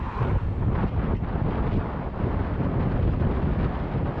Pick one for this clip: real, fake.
real